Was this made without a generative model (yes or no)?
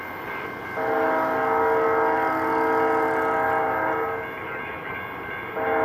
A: yes